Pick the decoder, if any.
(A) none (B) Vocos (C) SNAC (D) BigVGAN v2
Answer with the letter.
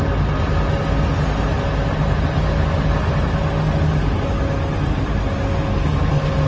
A